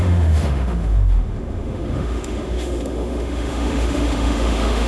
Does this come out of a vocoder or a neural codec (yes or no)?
yes